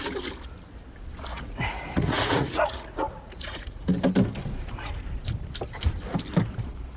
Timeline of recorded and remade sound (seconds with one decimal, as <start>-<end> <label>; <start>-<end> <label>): 0.0-1.3 recorded; 1.3-3.9 remade; 3.9-7.0 recorded